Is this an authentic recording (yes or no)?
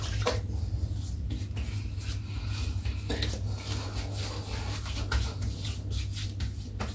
yes